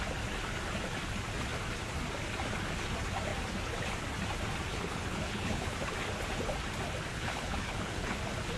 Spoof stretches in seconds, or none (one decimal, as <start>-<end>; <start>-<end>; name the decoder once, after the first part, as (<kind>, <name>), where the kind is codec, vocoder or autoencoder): 4.7-5.9 (codec, HILCodec); 7.1-8.2